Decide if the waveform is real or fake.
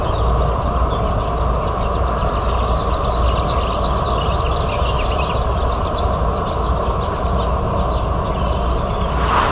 real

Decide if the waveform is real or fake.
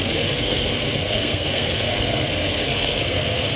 fake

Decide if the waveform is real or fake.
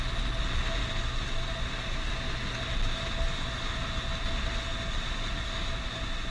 real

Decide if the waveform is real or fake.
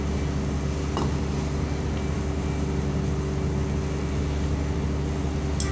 real